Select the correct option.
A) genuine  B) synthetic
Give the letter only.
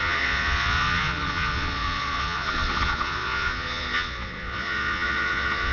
B